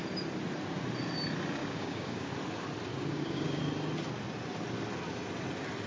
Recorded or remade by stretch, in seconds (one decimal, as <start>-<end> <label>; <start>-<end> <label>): 0.0-1.6 recorded; 1.6-2.3 remade; 2.3-2.9 recorded; 2.9-3.6 remade; 3.6-5.9 recorded